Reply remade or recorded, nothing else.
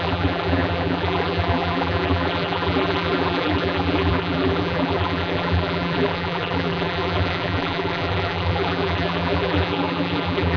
remade